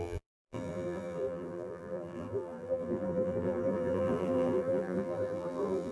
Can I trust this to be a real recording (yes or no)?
no